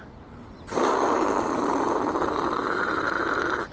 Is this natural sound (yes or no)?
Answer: no